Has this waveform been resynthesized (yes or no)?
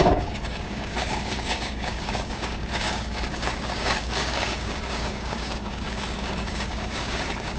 yes